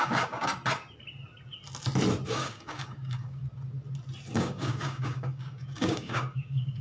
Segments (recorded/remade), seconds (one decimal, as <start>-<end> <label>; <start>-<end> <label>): 0.0-0.5 remade; 0.5-2.3 recorded; 2.3-3.4 remade; 3.4-4.3 recorded; 4.3-6.8 remade